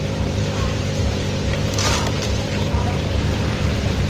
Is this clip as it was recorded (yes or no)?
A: no